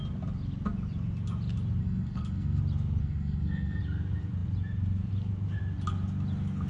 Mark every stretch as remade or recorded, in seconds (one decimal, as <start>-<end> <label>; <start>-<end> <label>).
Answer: 0.0-1.8 recorded; 1.8-2.6 remade; 2.6-3.0 recorded; 3.0-3.8 remade; 3.8-6.7 recorded